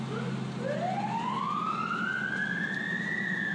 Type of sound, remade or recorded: recorded